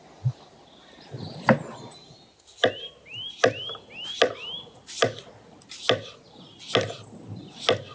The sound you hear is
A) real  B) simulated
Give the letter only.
A